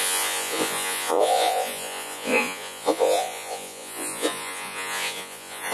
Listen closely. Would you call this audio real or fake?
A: fake